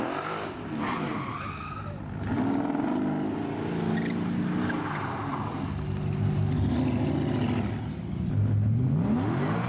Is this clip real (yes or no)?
yes